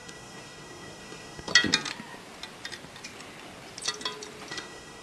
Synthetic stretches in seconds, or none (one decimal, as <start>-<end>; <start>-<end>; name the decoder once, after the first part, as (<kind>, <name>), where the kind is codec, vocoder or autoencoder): 0.0-1.5 (codec, SNAC); 4.5-5.0